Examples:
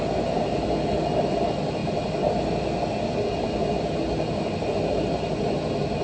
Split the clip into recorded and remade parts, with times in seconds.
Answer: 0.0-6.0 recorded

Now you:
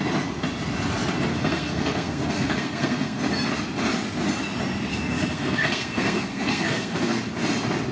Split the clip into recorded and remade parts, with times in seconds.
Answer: 0.0-1.3 recorded; 1.3-3.2 remade; 3.2-4.9 recorded; 4.9-7.2 remade; 7.2-7.9 recorded

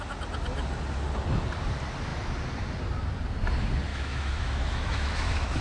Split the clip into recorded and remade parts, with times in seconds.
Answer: 0.0-3.9 recorded; 3.9-5.6 remade

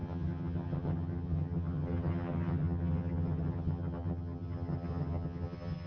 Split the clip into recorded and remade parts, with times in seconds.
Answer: 0.0-5.9 remade